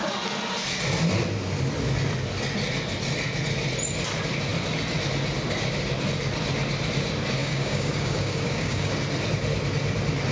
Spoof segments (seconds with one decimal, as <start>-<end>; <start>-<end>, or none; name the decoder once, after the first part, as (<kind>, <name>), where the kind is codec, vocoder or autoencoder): 7.4-8.9 (codec, DAC)